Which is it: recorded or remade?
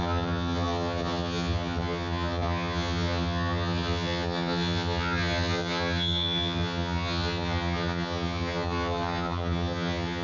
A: remade